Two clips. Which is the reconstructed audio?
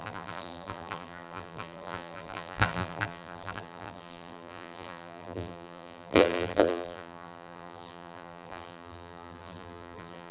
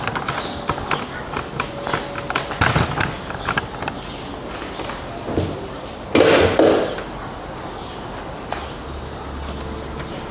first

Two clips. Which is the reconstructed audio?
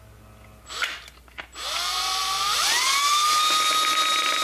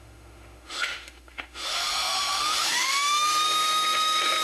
second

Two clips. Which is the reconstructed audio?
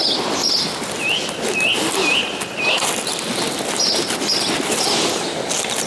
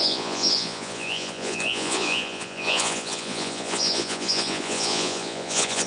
second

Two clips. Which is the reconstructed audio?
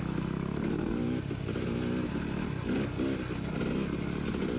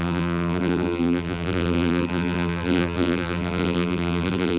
second